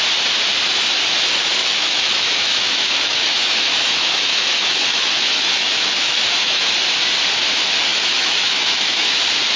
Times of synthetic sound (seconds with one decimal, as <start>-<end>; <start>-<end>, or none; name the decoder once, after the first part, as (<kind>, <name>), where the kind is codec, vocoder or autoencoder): 1.6-6.7 (autoencoder, DAC-VAE); 7.9-9.2